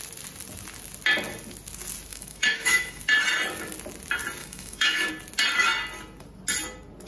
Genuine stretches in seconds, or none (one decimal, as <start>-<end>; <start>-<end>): 0.0-2.1; 3.0-4.4; 5.1-7.1